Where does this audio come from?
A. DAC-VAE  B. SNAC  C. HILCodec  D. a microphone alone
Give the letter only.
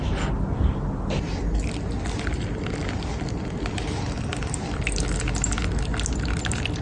D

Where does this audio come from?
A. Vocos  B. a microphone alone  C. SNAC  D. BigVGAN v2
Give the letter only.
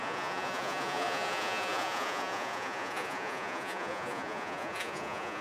A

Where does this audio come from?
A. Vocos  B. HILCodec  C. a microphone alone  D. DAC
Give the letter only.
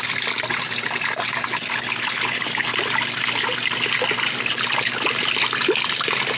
C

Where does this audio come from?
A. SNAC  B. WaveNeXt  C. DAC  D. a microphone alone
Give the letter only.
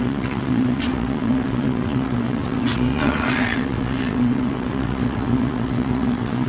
B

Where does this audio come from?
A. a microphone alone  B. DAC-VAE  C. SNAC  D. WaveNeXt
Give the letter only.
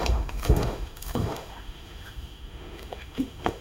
B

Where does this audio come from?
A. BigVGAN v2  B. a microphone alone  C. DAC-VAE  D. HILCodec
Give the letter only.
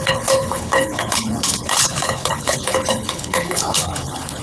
D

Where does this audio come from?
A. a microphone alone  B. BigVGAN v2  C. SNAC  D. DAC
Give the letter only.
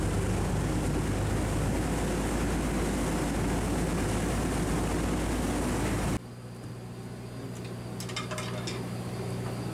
A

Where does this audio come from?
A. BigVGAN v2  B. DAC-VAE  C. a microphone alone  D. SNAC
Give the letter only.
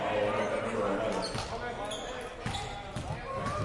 C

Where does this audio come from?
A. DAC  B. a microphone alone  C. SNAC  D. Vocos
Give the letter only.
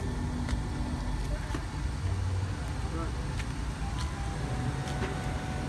B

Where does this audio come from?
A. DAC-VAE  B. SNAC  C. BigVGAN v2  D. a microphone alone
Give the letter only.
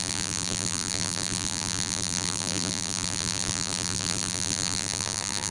C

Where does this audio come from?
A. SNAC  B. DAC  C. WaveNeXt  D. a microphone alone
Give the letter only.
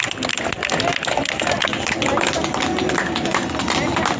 D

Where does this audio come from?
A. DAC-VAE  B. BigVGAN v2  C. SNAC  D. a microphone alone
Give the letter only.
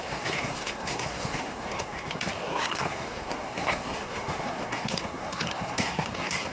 C